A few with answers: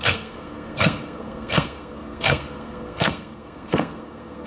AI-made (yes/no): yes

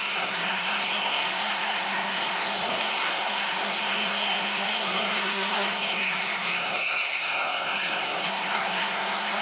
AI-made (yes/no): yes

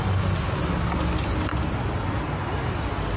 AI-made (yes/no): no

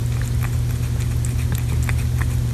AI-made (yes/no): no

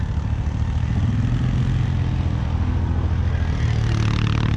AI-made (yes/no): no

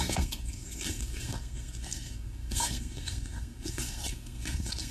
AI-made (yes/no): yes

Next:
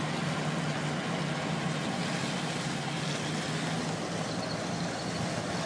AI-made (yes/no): no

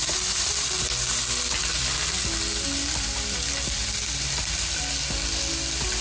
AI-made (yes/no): no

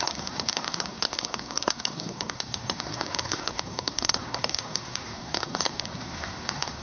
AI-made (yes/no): yes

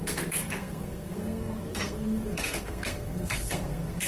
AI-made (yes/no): yes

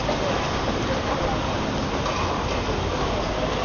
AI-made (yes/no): no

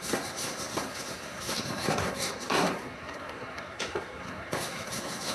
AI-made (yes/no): yes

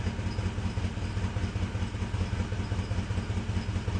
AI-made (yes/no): no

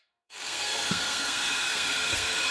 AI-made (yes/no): yes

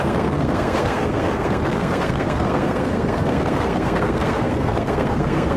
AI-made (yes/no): yes